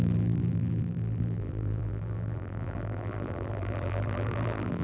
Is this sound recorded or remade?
remade